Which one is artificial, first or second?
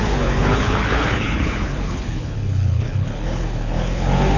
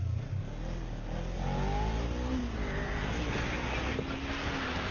first